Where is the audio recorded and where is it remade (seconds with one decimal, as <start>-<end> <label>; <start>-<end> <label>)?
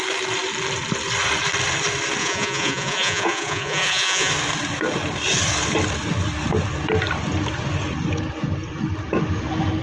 0.0-2.2 recorded; 2.2-4.3 remade; 4.3-9.8 recorded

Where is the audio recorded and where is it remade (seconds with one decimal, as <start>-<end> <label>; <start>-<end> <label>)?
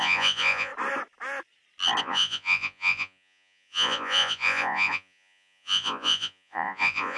0.0-0.7 remade; 0.7-2.0 recorded; 2.0-7.2 remade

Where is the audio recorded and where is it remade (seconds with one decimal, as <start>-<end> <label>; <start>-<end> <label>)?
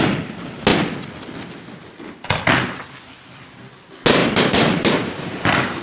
0.0-4.2 recorded; 4.2-5.8 remade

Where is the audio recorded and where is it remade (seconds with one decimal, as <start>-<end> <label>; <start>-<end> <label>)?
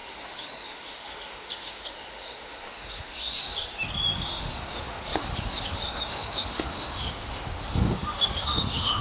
0.0-3.5 remade; 3.5-4.4 recorded; 4.4-9.0 remade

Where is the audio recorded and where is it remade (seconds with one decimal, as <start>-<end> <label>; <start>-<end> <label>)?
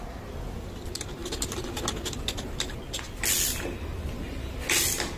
0.0-5.2 recorded